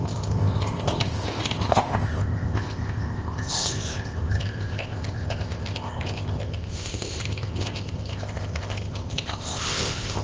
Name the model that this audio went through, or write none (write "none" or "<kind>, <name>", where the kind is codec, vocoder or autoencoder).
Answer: codec, ZipCodec